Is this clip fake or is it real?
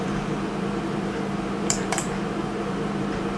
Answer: fake